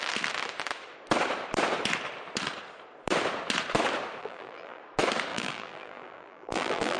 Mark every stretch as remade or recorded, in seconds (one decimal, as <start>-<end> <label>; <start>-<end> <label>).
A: 0.0-4.2 recorded; 4.2-4.8 remade; 4.8-5.3 recorded; 5.3-7.0 remade